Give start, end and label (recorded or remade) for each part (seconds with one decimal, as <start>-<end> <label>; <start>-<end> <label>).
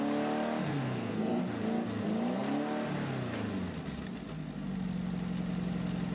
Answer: 0.0-0.7 recorded; 0.7-1.4 remade; 1.4-6.1 recorded